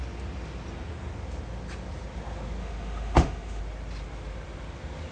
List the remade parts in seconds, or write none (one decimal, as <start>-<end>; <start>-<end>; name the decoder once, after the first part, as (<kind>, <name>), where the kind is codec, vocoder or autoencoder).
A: 2.6-3.6 (autoencoder, DAC-VAE)